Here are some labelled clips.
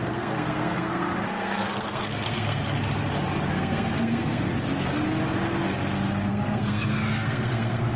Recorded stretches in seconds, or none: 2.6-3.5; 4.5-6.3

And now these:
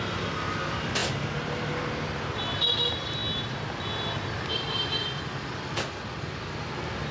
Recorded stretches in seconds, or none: 0.0-7.1

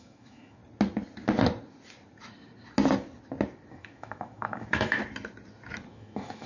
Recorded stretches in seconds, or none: 0.6-3.7; 5.0-5.9